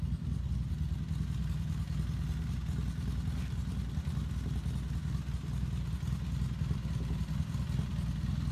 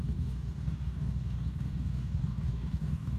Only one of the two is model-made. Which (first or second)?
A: second